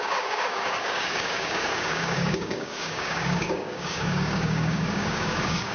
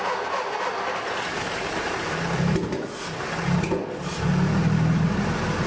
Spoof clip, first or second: first